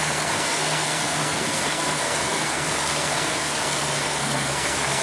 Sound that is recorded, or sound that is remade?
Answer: remade